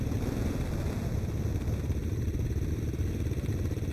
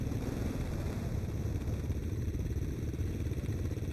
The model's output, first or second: second